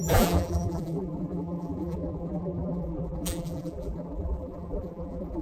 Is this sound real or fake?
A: fake